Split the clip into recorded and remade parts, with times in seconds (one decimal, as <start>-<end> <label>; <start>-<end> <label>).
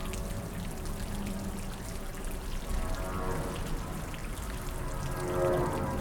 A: 0.0-4.2 recorded; 4.2-4.8 remade; 4.8-6.0 recorded